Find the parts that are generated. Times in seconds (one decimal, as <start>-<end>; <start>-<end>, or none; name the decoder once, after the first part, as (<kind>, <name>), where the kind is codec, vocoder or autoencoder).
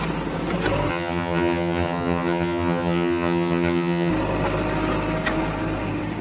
0.9-4.1 (vocoder, HiFi-GAN)